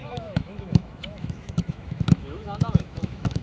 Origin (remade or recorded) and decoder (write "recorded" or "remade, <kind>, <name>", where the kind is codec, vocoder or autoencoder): remade, autoencoder, DAC-VAE